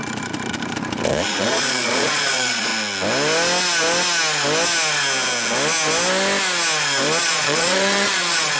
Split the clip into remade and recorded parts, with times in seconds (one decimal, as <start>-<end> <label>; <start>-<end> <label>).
0.0-1.1 recorded; 1.1-2.7 remade; 2.7-7.2 recorded; 7.2-8.6 remade